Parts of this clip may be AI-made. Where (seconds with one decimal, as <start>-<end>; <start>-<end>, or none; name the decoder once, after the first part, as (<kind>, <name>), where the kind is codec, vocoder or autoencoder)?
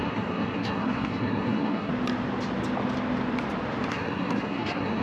0.0-1.9 (codec, SNAC); 3.9-5.0